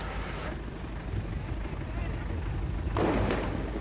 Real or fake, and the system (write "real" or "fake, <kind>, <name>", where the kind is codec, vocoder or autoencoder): real